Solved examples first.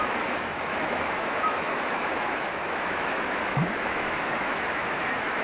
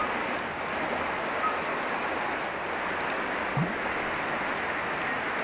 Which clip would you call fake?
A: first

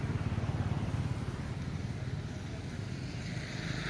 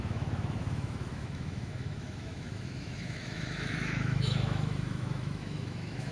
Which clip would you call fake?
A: second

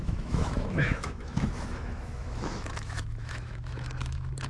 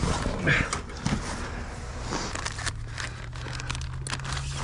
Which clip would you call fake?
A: first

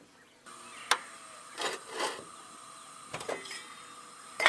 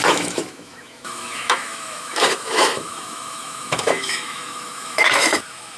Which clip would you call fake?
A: second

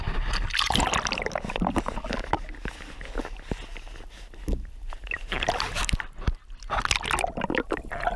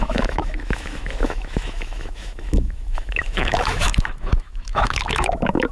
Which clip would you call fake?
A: second